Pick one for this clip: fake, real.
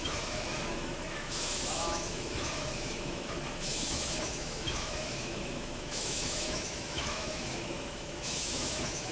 fake